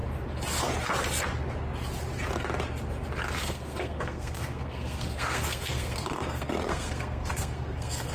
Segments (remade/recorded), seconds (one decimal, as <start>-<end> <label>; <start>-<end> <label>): 0.0-3.4 recorded; 3.4-8.1 remade